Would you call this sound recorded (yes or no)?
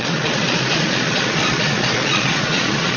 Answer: no